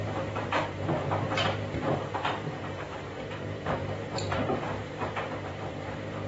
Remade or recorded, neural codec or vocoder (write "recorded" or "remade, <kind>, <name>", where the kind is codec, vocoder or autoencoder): remade, vocoder, BigVGAN v2